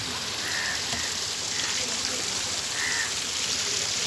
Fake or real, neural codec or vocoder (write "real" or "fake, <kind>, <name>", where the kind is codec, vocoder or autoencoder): real